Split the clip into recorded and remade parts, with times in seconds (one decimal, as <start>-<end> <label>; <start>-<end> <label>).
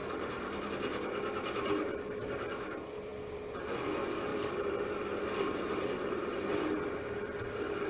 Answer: 0.0-0.7 remade; 0.7-4.3 recorded; 4.3-6.5 remade; 6.5-7.9 recorded